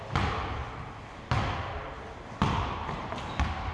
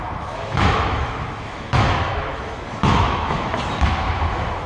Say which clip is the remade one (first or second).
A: second